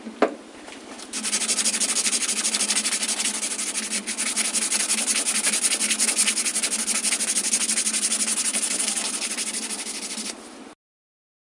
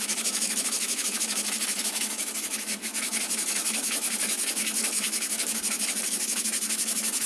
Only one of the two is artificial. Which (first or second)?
second